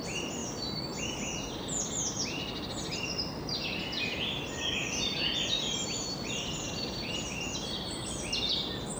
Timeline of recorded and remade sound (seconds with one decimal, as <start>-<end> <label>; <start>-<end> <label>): 0.0-9.0 recorded